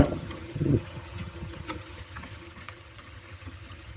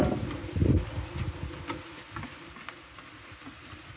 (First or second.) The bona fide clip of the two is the second